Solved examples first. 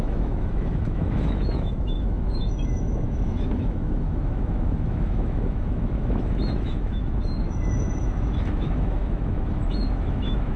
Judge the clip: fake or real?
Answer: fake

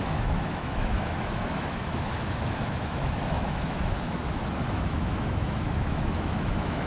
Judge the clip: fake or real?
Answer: fake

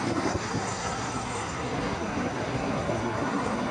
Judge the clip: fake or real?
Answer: fake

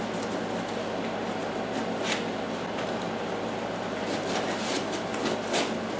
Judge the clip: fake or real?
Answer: real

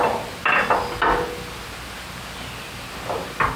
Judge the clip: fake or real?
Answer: real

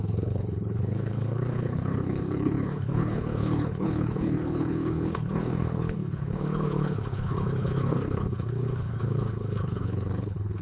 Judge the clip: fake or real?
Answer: fake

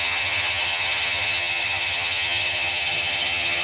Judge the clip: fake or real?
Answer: fake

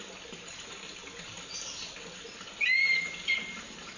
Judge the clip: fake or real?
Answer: real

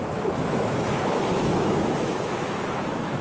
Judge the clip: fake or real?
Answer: fake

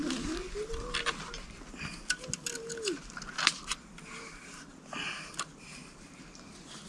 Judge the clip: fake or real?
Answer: real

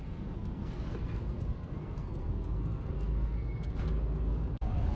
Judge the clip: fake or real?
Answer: fake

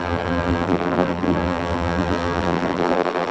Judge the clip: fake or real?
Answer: fake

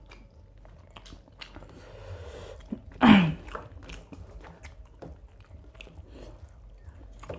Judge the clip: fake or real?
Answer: real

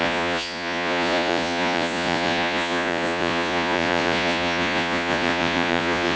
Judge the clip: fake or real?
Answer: fake